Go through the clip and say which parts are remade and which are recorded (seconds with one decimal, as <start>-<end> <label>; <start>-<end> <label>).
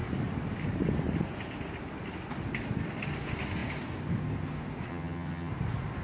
0.0-4.9 recorded; 4.9-5.5 remade; 5.5-6.0 recorded